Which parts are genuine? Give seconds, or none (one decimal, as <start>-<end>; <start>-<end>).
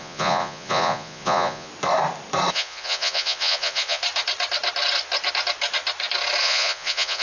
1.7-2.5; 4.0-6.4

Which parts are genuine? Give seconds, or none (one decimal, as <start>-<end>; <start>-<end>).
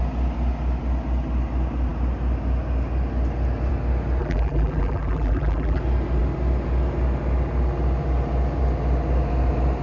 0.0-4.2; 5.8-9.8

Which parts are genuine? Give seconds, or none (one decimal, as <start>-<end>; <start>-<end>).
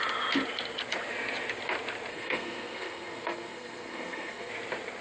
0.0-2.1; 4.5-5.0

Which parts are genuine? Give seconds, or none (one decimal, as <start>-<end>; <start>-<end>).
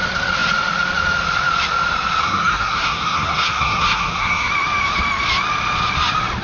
0.0-2.2; 4.5-6.4